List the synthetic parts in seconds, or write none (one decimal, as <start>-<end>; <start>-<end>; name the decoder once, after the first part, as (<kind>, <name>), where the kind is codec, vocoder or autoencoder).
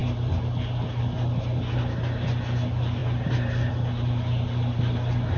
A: none